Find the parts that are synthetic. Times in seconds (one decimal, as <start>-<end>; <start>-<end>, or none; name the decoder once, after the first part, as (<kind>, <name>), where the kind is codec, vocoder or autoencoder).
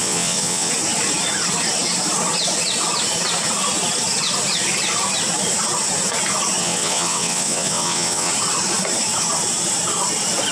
0.0-0.7 (vocoder, WaveNeXt); 6.6-8.3